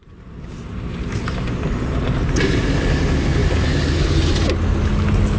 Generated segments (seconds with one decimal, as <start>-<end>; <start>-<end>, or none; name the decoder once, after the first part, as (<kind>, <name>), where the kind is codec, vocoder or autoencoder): 0.0-3.0 (vocoder, BigVGAN v2)